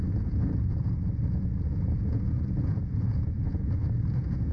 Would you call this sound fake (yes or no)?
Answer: yes